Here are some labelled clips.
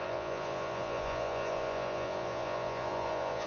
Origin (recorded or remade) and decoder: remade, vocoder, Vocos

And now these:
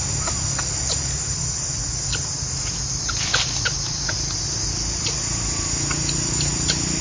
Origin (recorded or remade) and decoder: recorded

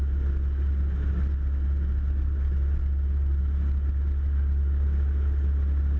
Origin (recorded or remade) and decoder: recorded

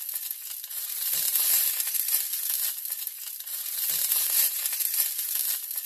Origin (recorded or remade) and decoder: recorded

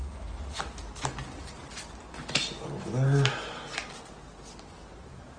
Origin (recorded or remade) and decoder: recorded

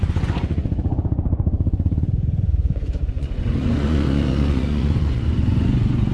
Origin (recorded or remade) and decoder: remade, vocoder, Vocos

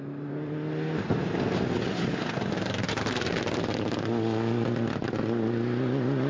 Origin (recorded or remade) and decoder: recorded